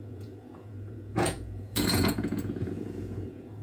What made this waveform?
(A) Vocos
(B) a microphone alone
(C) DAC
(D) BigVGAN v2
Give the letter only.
A